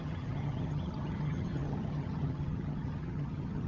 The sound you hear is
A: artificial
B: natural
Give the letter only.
A